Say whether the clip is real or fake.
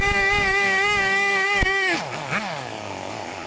fake